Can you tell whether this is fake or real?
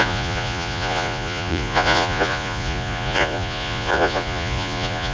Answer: fake